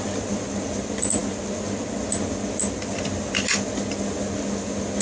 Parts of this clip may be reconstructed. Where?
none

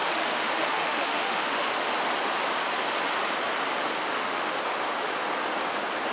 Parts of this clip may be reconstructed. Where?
0.0-1.9; 4.1-4.6

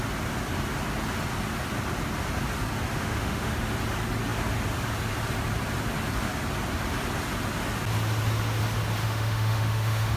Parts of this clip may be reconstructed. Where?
2.9-3.5; 9.0-10.2

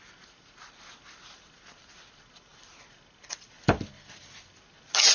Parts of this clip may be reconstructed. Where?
none

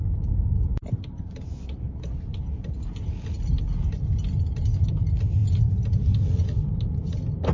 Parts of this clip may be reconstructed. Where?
1.5-2.1

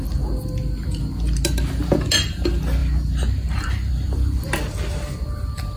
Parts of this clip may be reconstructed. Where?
none

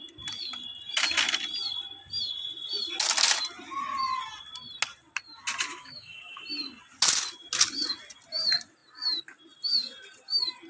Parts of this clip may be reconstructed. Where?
5.7-6.4

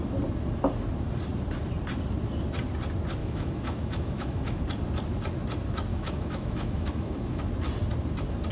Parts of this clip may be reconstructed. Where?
3.2-4.6; 5.9-7.4